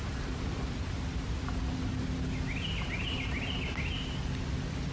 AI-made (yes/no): no